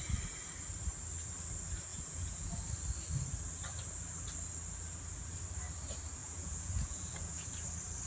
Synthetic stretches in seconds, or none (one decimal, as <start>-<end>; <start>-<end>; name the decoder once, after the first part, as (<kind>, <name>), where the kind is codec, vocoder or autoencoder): 1.9-2.6 (vocoder, Vocos); 6.2-7.5